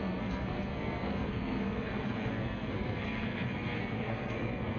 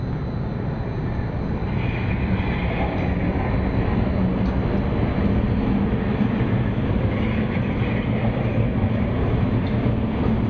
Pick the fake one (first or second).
first